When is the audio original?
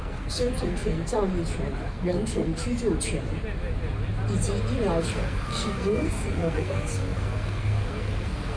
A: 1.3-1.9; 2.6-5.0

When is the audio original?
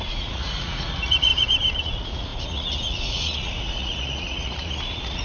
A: 1.3-1.8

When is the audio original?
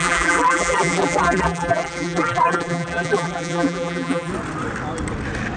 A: 4.3-5.6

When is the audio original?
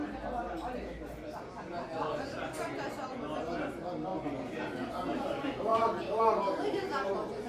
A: 0.0-5.7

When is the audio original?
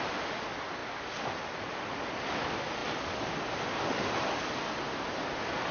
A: 0.0-5.7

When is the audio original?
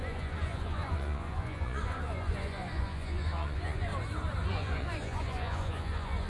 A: 3.9-4.5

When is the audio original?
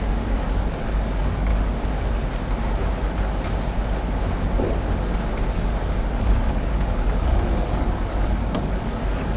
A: 1.5-6.2